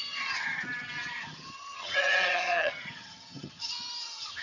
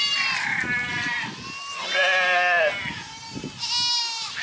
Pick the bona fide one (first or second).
second